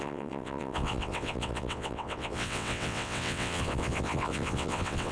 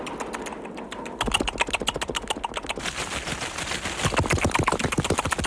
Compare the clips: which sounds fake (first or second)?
first